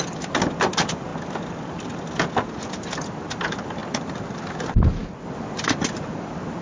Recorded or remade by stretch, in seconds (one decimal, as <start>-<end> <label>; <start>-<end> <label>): 0.0-1.1 remade; 1.1-2.7 recorded; 2.7-6.6 remade